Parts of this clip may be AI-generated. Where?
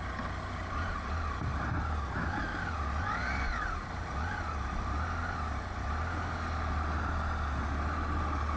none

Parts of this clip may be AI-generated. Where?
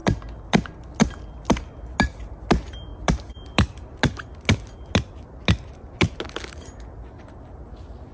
none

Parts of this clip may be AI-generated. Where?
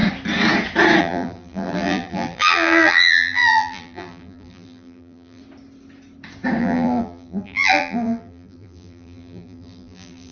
1.0-5.4 (vocoder, BigVGAN v2); 6.6-10.3